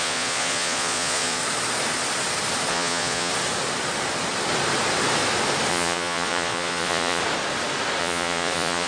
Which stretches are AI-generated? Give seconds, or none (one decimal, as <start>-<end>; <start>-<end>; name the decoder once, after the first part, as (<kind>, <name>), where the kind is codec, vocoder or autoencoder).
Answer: 0.0-1.4 (vocoder, Vocos); 2.7-3.3; 5.7-7.2; 8.0-8.9